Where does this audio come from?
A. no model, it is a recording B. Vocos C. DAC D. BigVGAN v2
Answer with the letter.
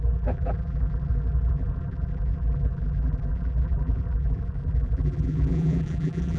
D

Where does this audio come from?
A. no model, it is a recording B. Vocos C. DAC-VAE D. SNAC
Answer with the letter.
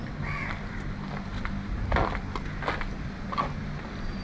A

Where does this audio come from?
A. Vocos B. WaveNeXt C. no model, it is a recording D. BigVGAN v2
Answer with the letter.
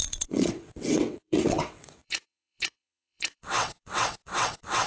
B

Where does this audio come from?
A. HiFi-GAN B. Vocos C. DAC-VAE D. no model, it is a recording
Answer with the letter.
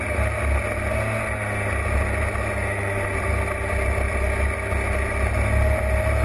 D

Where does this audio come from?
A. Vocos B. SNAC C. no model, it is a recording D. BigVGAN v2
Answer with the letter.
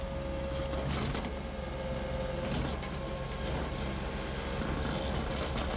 C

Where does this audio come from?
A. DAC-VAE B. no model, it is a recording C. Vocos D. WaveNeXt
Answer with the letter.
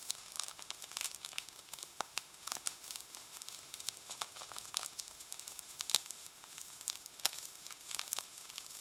A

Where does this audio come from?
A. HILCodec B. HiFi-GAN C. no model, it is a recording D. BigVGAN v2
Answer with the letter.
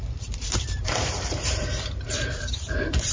D